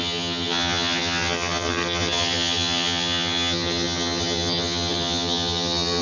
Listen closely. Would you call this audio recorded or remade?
remade